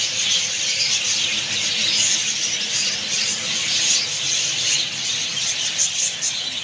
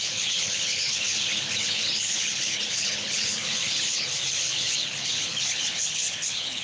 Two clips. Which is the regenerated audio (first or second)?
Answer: second